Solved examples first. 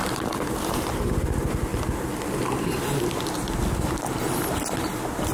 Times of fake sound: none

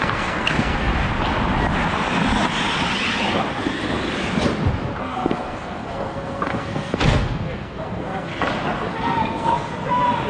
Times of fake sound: 0.0-0.9 (codec, SNAC); 5.0-8.3; 8.9-9.7

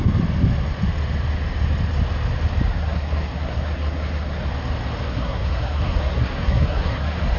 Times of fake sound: 2.7-4.5 (codec, SNAC); 5.1-7.4

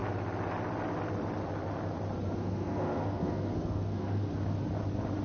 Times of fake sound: 2.4-4.3 (codec, SNAC)

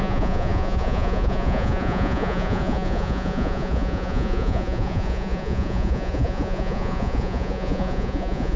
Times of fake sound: 0.0-8.6 (vocoder, Vocos)

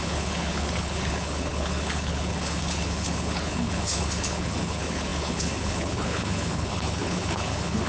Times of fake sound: 0.0-7.9 (codec, HILCodec)